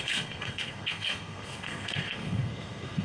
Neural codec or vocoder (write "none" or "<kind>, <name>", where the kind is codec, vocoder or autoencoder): codec, SNAC